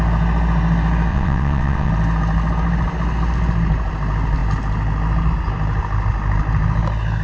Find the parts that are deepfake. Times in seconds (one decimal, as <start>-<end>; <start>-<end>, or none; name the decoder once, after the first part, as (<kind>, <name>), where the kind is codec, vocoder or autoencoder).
1.1-1.9 (vocoder, WaveNeXt)